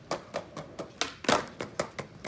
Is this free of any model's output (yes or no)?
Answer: yes